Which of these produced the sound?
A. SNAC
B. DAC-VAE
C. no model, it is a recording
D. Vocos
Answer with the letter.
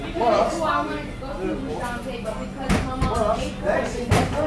C